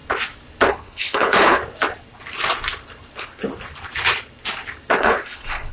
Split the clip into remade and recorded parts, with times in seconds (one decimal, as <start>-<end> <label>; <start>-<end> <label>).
0.0-0.7 recorded; 0.7-1.6 remade; 1.6-5.0 recorded; 5.0-5.7 remade